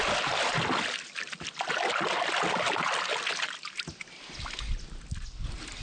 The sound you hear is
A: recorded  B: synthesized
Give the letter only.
A